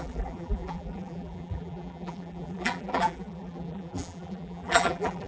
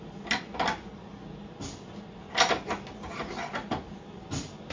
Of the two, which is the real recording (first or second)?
second